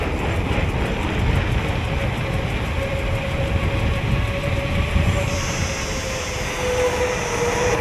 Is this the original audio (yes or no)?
yes